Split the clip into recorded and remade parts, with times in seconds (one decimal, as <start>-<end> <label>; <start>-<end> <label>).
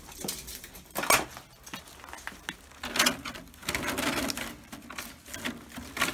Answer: 0.0-6.1 recorded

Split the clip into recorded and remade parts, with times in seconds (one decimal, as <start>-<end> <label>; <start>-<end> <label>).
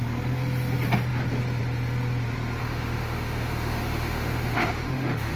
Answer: 0.0-2.6 recorded; 2.6-5.4 remade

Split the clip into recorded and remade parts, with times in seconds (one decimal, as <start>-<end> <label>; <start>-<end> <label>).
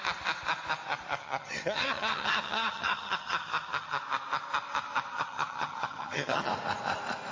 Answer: 0.0-1.2 recorded; 1.2-4.0 remade; 4.0-5.1 recorded; 5.1-6.5 remade; 6.5-7.3 recorded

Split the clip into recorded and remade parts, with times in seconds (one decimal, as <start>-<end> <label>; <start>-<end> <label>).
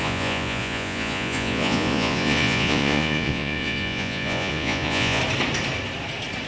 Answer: 0.0-5.2 remade; 5.2-6.5 recorded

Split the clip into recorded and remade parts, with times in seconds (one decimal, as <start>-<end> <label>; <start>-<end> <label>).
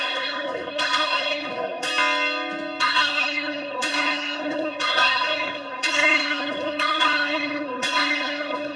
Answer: 0.0-1.9 remade; 1.9-2.8 recorded; 2.8-8.8 remade